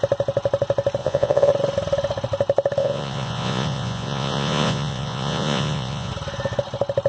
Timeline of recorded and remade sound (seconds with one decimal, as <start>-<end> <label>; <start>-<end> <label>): 0.0-1.0 recorded; 1.0-1.5 remade; 1.5-2.8 recorded; 2.8-6.1 remade; 6.1-7.1 recorded

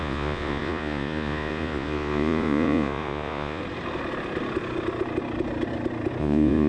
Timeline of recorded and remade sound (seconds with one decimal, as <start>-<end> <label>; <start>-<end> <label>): 0.0-3.6 remade; 3.6-6.2 recorded; 6.2-6.7 remade

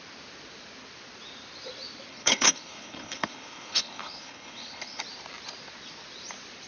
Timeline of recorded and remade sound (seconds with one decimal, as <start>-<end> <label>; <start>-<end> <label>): 0.0-2.1 recorded; 2.1-5.0 remade; 5.0-6.7 recorded

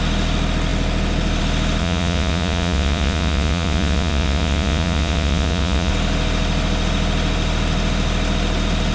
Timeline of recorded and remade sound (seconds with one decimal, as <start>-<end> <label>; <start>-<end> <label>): 0.0-1.8 recorded; 1.8-5.9 remade; 5.9-8.9 recorded

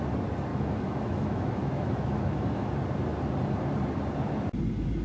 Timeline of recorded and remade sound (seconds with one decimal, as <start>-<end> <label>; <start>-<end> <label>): 0.0-0.5 recorded; 0.5-2.7 remade; 2.7-5.0 recorded

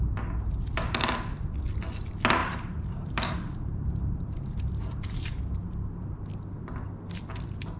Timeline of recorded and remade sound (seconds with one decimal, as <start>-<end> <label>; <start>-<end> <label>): 0.0-2.4 recorded; 2.4-5.4 remade; 5.4-7.8 recorded